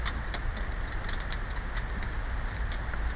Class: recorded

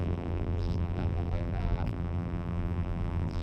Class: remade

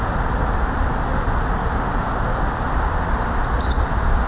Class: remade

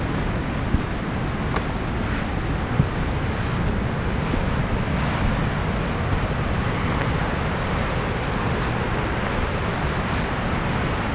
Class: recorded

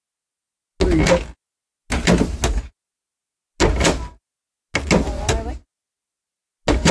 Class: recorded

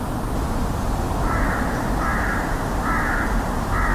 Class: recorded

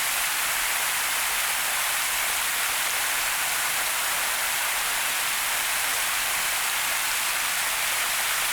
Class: remade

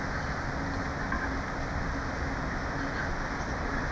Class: recorded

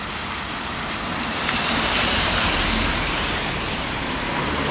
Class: remade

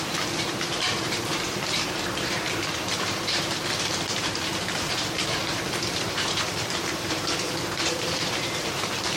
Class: remade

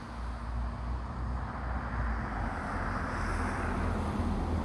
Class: recorded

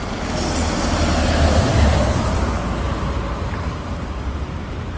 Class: recorded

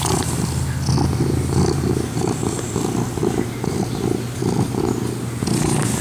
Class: recorded